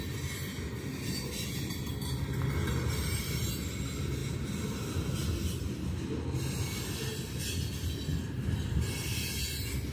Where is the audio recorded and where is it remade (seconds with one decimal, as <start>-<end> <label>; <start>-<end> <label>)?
0.0-0.9 recorded; 0.9-1.7 remade; 1.7-2.6 recorded; 2.6-3.5 remade; 3.5-9.9 recorded